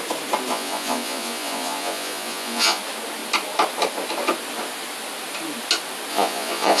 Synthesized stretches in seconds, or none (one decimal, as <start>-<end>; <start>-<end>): 0.5-2.8; 6.1-6.8